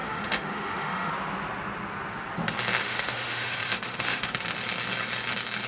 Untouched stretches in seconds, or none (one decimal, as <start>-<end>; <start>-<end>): 1.1-2.8; 4.3-5.7